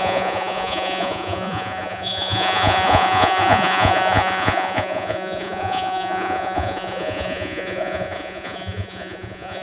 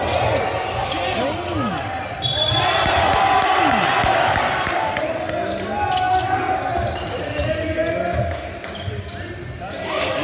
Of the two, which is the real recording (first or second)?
second